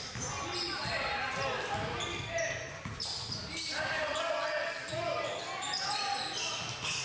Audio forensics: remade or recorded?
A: recorded